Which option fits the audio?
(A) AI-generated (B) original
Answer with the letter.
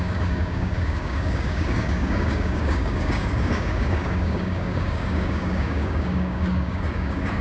A